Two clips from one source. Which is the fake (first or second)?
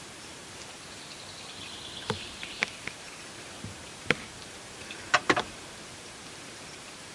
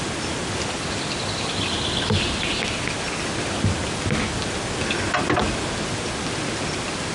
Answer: first